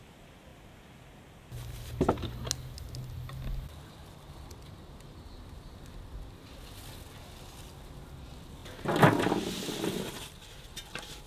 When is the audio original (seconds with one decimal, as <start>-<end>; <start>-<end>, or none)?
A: 0.0-11.3